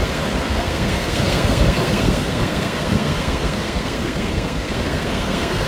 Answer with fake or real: fake